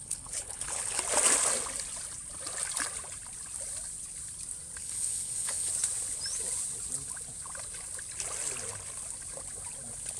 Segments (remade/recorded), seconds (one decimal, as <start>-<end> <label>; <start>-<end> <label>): 0.0-1.0 remade; 1.0-4.8 recorded; 4.8-5.7 remade; 5.7-10.2 recorded